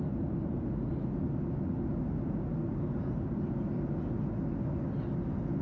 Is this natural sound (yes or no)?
yes